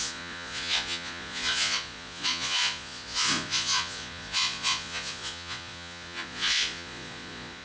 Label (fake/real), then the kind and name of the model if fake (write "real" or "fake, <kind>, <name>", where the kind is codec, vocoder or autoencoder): fake, vocoder, Vocos